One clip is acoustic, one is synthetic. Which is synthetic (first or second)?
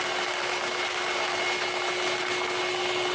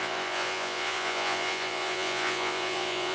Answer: second